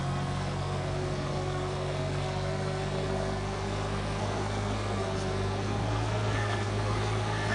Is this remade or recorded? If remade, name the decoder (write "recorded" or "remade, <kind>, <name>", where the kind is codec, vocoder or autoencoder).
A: remade, codec, SNAC